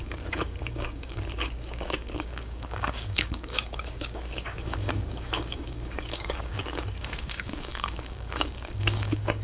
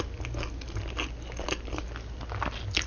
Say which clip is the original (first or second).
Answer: second